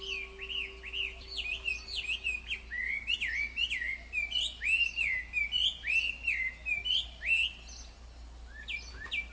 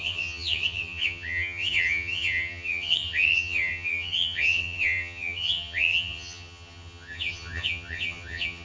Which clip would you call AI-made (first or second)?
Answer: second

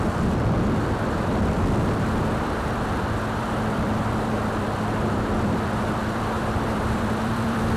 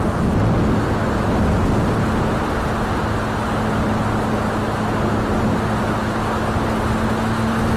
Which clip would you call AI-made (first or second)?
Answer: first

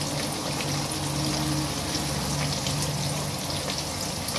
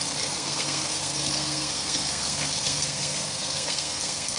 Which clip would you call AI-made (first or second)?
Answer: second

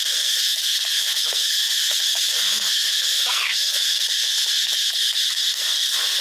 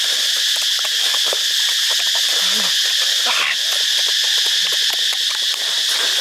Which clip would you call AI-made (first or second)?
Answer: first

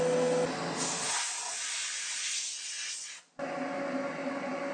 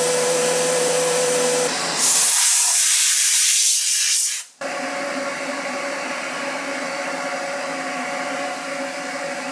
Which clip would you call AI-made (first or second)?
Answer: second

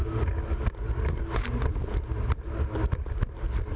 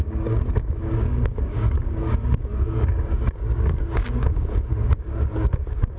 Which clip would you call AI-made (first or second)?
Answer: second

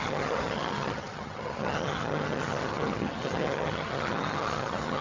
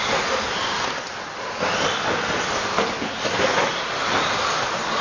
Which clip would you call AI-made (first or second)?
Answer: first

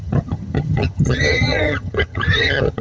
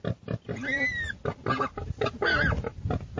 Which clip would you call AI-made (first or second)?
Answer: first